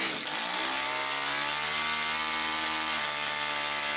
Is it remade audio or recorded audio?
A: recorded